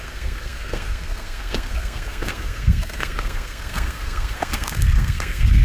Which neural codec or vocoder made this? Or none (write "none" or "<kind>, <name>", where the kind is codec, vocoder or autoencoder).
codec, SNAC